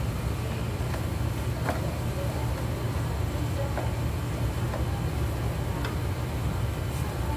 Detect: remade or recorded recorded